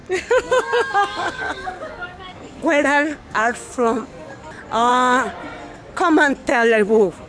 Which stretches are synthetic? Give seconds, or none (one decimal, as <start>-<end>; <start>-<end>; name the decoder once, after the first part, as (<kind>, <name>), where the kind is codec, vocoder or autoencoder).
0.0-4.4 (codec, DAC); 6.4-7.3